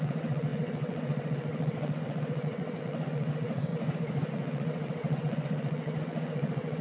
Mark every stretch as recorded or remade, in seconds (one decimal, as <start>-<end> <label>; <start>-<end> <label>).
0.0-3.7 remade; 3.7-4.3 recorded; 4.3-6.8 remade